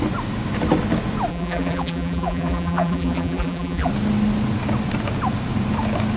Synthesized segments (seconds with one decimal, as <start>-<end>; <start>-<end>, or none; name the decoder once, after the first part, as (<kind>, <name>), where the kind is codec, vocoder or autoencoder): 1.3-3.9 (vocoder, BigVGAN v2)